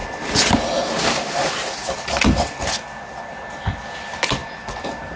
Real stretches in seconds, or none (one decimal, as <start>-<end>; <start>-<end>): 0.0-5.2